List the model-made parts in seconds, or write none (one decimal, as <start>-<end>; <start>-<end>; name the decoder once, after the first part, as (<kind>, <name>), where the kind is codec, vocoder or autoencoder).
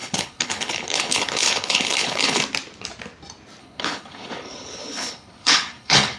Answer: 0.0-2.4 (codec, HILCodec); 3.6-6.2